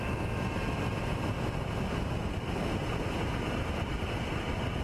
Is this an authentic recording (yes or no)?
yes